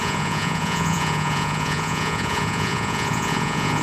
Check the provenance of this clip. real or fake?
fake